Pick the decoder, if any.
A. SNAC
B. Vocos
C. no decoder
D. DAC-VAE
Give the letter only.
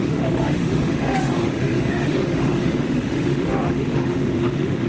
D